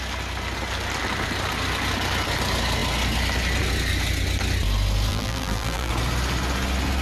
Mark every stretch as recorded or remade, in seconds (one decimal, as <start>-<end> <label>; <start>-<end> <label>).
0.0-5.1 recorded; 5.1-5.9 remade; 5.9-7.0 recorded